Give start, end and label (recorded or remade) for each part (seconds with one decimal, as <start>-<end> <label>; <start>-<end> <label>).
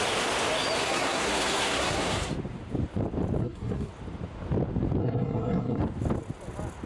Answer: 0.0-0.8 recorded; 0.8-2.3 remade; 2.3-3.4 recorded; 3.4-3.9 remade; 3.9-5.0 recorded; 5.0-5.8 remade; 5.8-6.9 recorded